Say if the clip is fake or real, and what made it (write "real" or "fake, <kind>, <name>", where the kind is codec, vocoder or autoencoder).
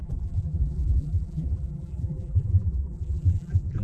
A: fake, vocoder, BigVGAN v2